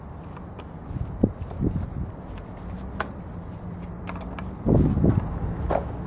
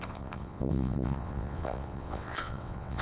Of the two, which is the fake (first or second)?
second